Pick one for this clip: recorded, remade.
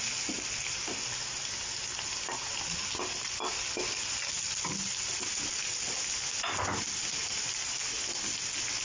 recorded